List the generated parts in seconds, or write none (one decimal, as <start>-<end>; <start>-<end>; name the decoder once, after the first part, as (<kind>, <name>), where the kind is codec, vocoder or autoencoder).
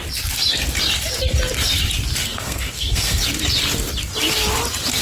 2.2-3.2 (codec, SNAC)